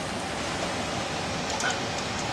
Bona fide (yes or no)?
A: yes